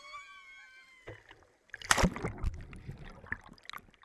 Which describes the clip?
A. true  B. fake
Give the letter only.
A